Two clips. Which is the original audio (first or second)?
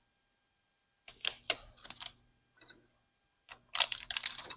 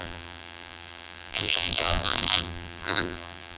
first